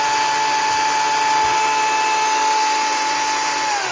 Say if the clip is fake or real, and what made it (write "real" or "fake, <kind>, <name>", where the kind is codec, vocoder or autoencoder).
real